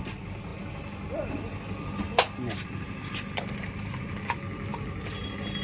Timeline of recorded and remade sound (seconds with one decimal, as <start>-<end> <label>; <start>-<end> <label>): 0.0-5.6 recorded